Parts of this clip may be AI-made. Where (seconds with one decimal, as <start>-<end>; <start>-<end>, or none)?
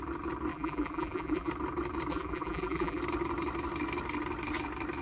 0.5-1.5; 2.1-3.0